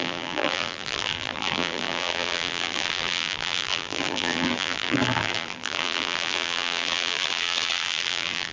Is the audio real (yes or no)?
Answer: no